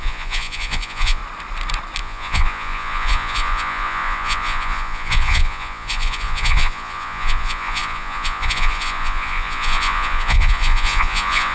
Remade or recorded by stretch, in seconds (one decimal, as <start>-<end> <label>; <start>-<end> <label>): 0.0-1.2 remade; 1.2-2.0 recorded; 2.0-11.5 remade